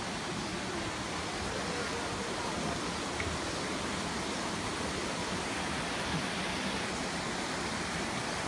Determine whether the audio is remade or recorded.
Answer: recorded